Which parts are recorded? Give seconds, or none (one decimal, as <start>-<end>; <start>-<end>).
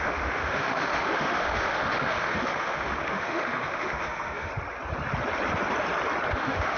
4.5-6.3